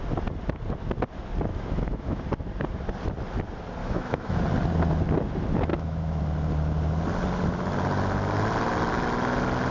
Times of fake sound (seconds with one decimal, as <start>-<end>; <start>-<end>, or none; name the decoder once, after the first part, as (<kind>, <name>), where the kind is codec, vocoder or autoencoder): 1.5-2.2 (autoencoder, DAC-VAE); 3.8-4.4; 5.7-6.2